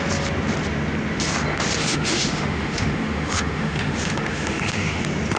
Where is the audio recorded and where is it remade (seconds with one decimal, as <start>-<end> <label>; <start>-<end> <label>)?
0.0-1.8 recorded; 1.8-5.0 remade; 5.0-5.4 recorded